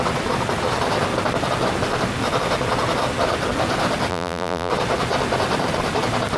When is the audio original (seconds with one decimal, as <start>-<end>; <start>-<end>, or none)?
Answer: 0.0-4.1; 4.7-6.4